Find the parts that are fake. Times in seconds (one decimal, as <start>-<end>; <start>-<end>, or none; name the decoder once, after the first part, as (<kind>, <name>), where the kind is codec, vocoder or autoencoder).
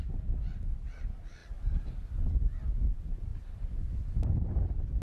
none